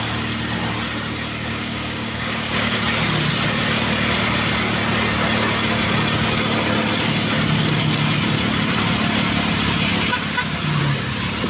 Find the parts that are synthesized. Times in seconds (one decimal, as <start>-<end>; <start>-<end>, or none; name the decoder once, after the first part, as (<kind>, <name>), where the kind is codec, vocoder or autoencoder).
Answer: 1.4-2.8 (codec, DAC)